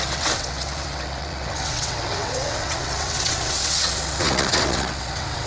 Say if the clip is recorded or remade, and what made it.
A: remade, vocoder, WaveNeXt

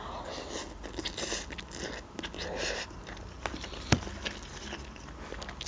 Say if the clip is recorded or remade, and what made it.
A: recorded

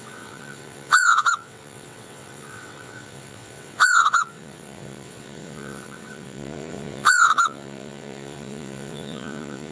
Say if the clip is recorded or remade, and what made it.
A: remade, vocoder, WaveNeXt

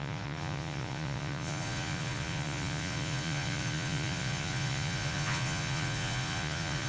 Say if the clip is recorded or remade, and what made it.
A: remade, vocoder, Vocos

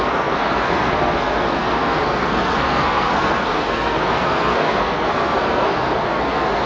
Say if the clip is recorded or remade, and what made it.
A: remade, codec, SNAC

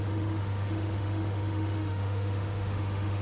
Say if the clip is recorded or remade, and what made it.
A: remade, autoencoder, DAC-VAE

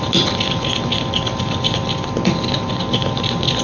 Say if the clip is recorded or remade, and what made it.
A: recorded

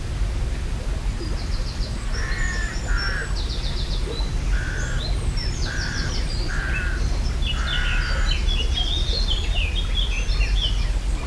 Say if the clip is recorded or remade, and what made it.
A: recorded